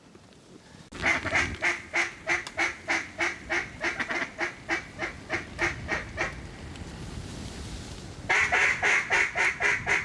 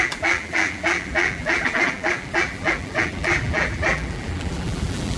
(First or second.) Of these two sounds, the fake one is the second